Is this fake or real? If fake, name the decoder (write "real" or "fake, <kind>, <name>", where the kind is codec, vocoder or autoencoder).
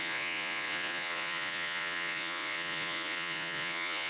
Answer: fake, vocoder, Vocos